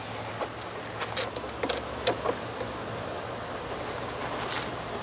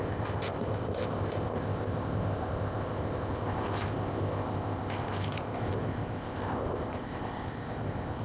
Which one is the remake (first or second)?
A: second